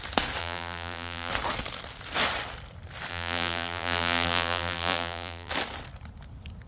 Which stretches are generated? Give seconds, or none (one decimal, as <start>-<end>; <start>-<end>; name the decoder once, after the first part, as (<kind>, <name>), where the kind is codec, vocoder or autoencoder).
0.4-1.3 (vocoder, BigVGAN v2); 3.1-5.5